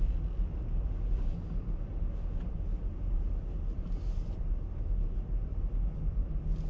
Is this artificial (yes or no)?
no